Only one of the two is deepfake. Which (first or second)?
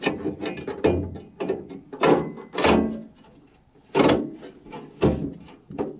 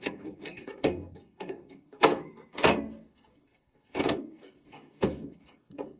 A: second